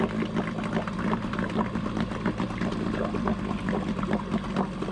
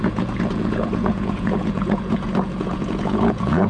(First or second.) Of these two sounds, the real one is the first